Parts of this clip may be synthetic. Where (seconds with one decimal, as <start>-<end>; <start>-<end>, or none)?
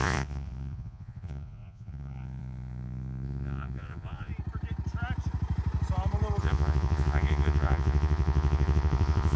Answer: 0.0-4.3; 6.4-9.4